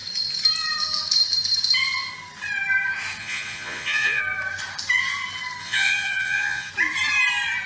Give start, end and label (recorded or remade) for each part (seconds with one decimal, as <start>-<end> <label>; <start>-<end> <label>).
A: 0.0-3.2 recorded; 3.2-4.2 remade; 4.2-5.6 recorded; 5.6-6.7 remade; 6.7-7.7 recorded